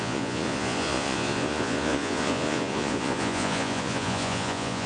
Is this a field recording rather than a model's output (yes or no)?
no